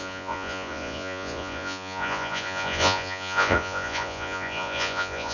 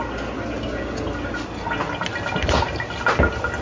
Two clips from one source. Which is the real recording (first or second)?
second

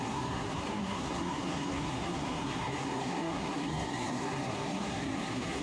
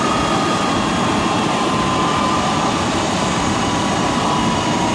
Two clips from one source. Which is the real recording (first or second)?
second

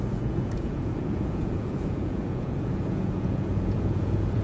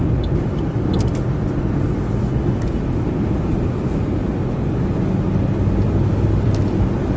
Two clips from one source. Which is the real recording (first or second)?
second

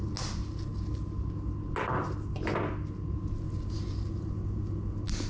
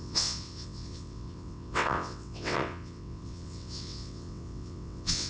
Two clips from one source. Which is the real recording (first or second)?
first